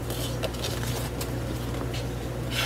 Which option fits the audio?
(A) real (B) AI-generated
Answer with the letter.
A